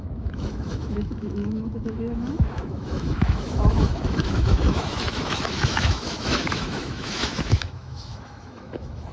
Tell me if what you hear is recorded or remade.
remade